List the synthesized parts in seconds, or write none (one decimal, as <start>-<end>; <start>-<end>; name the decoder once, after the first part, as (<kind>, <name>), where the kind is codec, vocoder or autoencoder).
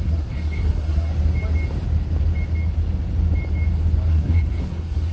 0.0-1.1 (codec, SNAC); 4.1-5.1